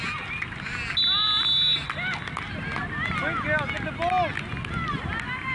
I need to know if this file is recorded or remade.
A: recorded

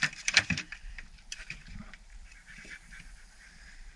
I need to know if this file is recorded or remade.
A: remade